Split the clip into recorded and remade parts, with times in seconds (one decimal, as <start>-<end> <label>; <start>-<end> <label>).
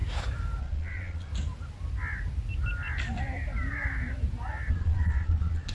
0.0-0.6 recorded; 0.6-1.3 remade; 1.3-4.7 recorded; 4.7-5.7 remade